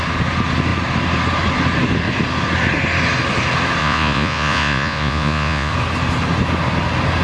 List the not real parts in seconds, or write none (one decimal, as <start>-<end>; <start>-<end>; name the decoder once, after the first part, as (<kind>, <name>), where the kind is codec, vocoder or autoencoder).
3.8-5.7 (vocoder, Vocos)